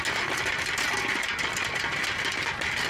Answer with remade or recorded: recorded